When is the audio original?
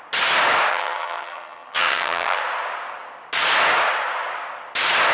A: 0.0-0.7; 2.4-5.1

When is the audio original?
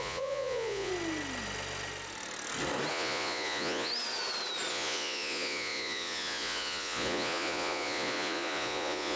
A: 0.9-2.9; 3.9-4.7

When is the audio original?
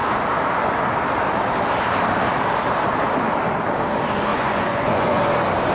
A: 0.0-4.3; 5.2-5.7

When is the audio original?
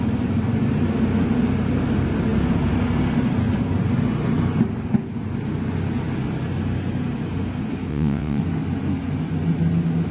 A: 0.0-7.9; 8.4-10.1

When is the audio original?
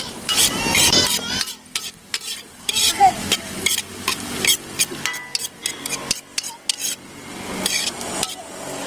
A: 0.0-2.0; 3.1-8.9